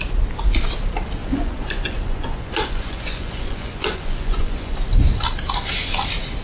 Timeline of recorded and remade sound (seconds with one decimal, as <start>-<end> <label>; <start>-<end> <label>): 0.0-1.2 recorded; 1.2-4.8 remade; 4.8-6.4 recorded

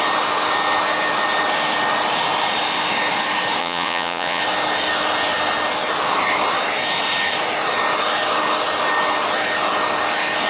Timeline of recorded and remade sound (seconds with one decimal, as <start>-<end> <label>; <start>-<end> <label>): 0.0-3.6 recorded; 3.6-4.4 remade; 4.4-10.5 recorded

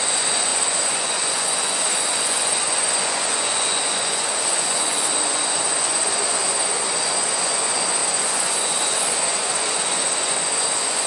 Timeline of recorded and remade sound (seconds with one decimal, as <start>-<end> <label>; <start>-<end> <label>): 0.0-11.1 remade

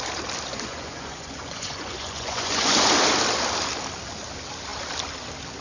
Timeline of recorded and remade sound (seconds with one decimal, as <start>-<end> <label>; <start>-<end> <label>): 0.0-0.5 recorded; 0.5-2.9 remade; 2.9-5.6 recorded

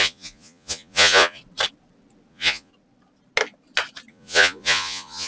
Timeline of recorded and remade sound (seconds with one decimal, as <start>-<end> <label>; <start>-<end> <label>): 0.0-1.4 remade; 1.4-2.3 recorded; 2.3-2.7 remade; 2.7-4.1 recorded; 4.1-5.3 remade

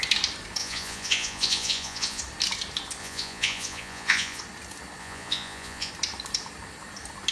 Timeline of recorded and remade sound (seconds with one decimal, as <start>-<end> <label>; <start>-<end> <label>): 0.0-0.6 recorded; 0.6-2.2 remade; 2.2-3.0 recorded; 3.0-4.4 remade; 4.4-5.0 recorded; 5.0-5.9 remade; 5.9-7.3 recorded

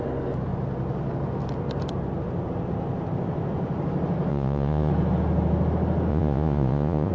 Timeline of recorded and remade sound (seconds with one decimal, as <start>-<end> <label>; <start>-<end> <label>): 0.0-4.3 recorded; 4.3-4.9 remade; 4.9-6.1 recorded; 6.1-7.1 remade

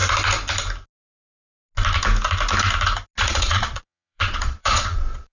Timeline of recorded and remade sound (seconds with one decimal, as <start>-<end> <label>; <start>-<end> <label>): 0.0-3.2 recorded; 3.2-5.3 remade